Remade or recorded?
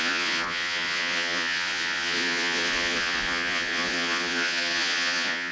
remade